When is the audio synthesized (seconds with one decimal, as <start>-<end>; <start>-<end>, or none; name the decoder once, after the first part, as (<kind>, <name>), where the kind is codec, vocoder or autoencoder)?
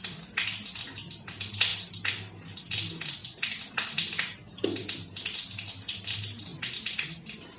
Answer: 0.0-1.7 (vocoder, BigVGAN v2); 2.6-3.2; 3.7-4.8; 5.6-6.5; 7.1-7.6